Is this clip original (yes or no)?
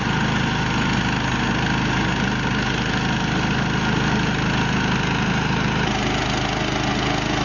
yes